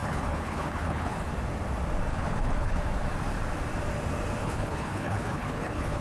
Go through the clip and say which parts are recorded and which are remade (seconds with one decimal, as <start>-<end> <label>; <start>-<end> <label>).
0.0-1.3 remade; 1.3-2.1 recorded; 2.1-2.8 remade; 2.8-4.4 recorded; 4.4-6.0 remade